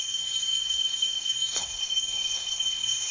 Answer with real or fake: fake